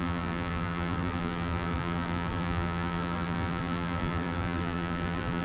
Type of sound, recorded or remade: remade